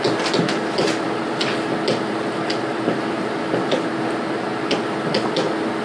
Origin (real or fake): real